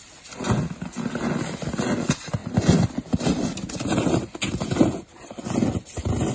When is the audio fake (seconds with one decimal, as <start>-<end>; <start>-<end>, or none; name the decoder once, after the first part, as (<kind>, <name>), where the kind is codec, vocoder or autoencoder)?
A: none